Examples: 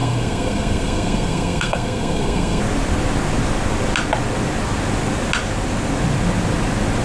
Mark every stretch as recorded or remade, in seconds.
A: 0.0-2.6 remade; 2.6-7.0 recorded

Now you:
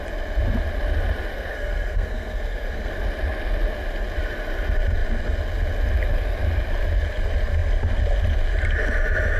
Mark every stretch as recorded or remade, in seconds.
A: 0.0-1.3 recorded; 1.3-2.9 remade; 2.9-9.4 recorded

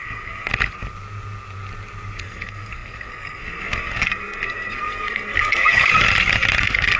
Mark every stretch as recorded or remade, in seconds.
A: 0.0-0.5 remade; 0.5-2.2 recorded; 2.2-5.9 remade; 5.9-6.6 recorded; 6.6-7.0 remade